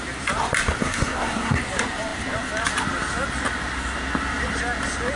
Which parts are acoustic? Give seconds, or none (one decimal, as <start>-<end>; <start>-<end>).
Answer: 0.0-0.8; 1.6-5.2